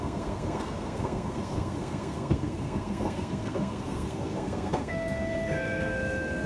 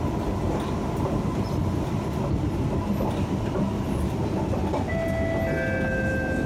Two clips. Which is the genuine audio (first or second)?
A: second